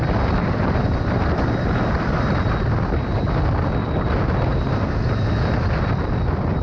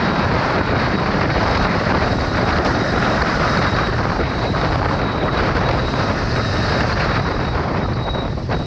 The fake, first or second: second